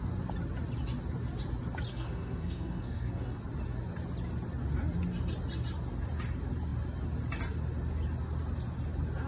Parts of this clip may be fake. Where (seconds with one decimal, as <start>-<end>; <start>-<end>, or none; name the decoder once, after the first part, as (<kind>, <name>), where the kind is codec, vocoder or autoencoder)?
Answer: 1.9-3.4 (codec, SNAC)

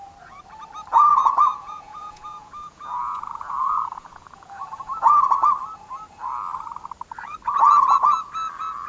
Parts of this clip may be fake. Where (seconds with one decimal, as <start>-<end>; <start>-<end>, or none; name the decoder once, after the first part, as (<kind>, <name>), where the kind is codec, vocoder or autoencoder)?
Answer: 1.1-5.1 (vocoder, Vocos)

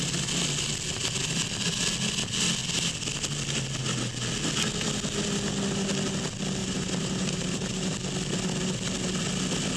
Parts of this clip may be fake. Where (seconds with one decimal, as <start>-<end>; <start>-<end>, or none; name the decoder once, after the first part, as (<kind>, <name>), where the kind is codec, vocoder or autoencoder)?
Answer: 6.6-7.8 (vocoder, BigVGAN v2)

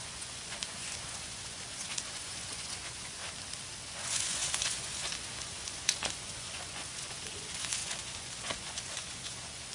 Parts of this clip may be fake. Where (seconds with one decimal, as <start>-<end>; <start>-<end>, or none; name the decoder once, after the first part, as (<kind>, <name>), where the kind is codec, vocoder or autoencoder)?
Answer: 0.0-3.2 (vocoder, Vocos); 3.9-9.7

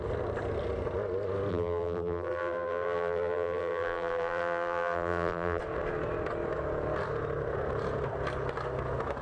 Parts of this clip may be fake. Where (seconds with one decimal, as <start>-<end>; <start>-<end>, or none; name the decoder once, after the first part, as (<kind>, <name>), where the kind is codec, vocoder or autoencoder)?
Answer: 1.5-5.6 (vocoder, BigVGAN v2)

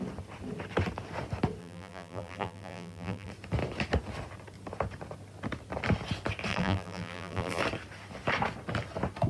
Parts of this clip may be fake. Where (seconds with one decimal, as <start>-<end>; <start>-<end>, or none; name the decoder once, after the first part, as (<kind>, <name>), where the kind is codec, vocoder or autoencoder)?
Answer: 1.6-3.3 (vocoder, BigVGAN v2); 6.5-7.6